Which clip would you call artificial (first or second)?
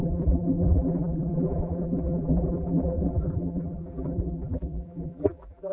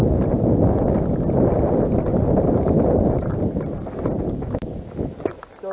first